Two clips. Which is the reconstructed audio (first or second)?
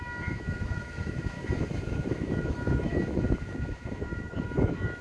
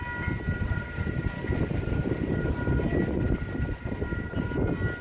first